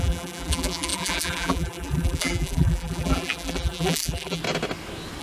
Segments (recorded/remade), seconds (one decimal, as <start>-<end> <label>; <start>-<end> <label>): 0.0-4.4 remade; 4.4-5.2 recorded